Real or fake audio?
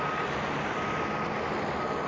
real